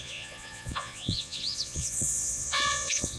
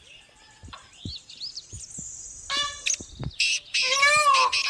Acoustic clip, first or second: second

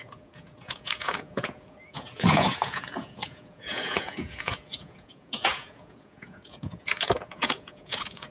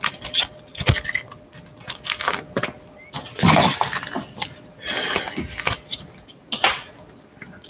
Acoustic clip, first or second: second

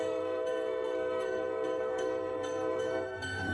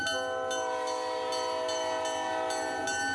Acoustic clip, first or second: second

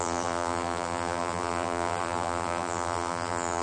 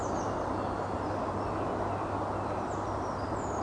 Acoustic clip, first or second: second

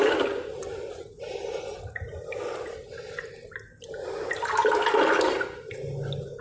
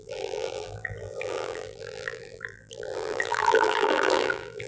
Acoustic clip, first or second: first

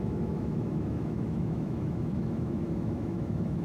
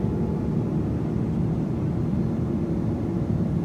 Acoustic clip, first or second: second